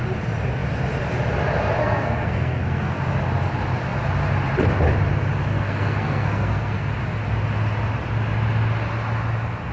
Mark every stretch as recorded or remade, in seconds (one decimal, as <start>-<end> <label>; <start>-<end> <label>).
0.0-1.8 recorded; 1.8-3.0 remade; 3.0-5.5 recorded; 5.5-6.9 remade; 6.9-9.7 recorded